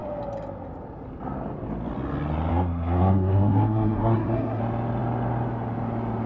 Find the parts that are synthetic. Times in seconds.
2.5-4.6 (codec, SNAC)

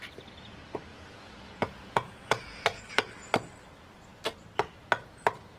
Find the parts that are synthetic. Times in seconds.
0.9-2.8 (vocoder, Vocos)

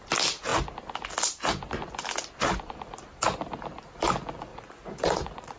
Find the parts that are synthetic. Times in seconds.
4.5-5.6 (vocoder, Vocos)

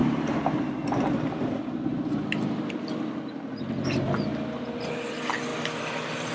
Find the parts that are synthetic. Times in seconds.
0.0-3.6 (vocoder, BigVGAN v2); 5.5-6.3

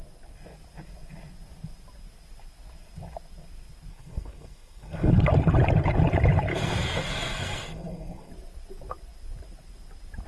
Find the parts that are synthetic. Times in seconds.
3.9-5.1 (codec, SNAC); 6.5-8.3

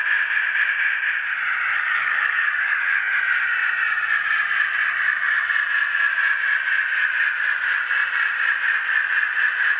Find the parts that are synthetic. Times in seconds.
1.7-3.1 (codec, DAC)

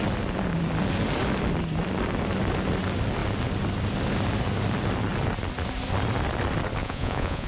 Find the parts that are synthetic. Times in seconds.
6.8-7.5 (vocoder, Vocos)